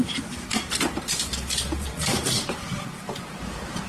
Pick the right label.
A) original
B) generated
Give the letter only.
B